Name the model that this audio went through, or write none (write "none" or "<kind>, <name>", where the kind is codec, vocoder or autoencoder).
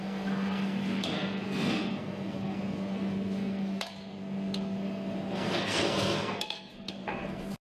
codec, SNAC